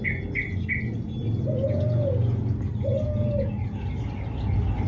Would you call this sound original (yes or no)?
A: yes